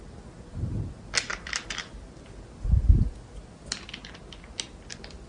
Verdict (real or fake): real